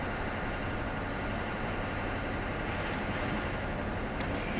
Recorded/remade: recorded